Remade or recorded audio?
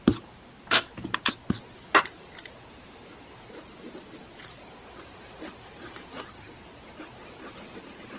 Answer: recorded